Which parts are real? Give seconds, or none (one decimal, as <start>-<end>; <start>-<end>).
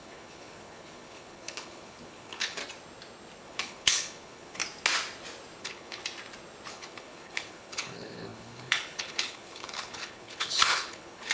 2.6-3.4; 4.6-5.6; 6.0-6.7